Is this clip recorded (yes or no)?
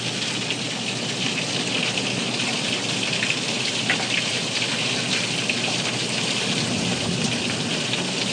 yes